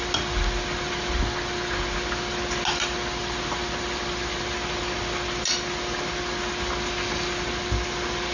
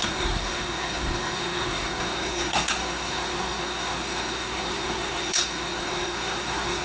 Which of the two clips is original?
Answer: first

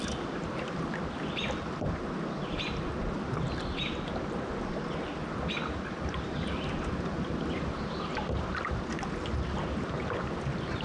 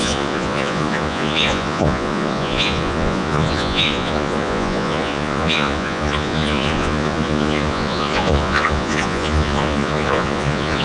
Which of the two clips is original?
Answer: first